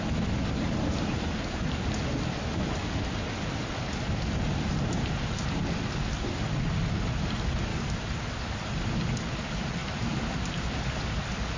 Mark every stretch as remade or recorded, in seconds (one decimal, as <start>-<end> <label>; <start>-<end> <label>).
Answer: 0.0-7.7 recorded; 7.7-8.2 remade; 8.2-9.8 recorded; 9.8-10.4 remade; 10.4-11.6 recorded